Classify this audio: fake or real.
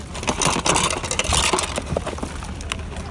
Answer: real